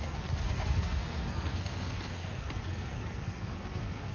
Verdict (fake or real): fake